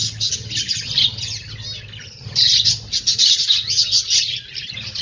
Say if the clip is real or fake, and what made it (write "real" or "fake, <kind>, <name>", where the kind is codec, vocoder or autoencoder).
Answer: real